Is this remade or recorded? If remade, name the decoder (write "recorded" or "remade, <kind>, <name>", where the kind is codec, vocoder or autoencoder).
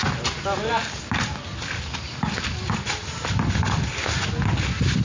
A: recorded